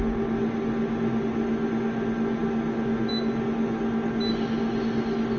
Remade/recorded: recorded